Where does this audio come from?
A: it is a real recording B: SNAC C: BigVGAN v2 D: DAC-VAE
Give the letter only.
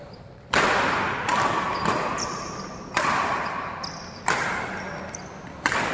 C